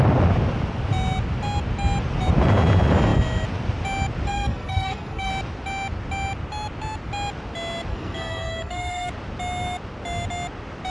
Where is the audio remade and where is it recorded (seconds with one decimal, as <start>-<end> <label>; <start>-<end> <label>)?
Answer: 0.0-4.3 recorded; 4.3-5.3 remade; 5.3-7.9 recorded; 7.9-9.1 remade; 9.1-10.9 recorded